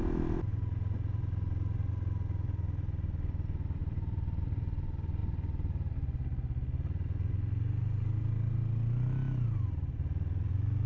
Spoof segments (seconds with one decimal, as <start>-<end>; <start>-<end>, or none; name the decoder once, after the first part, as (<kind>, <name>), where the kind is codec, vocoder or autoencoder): 3.8-4.4 (vocoder, BigVGAN v2)